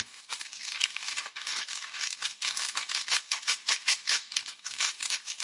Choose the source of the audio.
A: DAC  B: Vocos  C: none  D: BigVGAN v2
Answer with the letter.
A